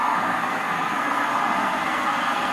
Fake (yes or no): yes